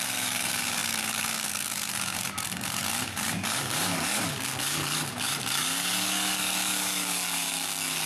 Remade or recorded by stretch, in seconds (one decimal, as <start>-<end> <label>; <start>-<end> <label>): 0.0-8.1 remade